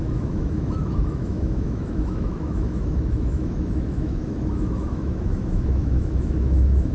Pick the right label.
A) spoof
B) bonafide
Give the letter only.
A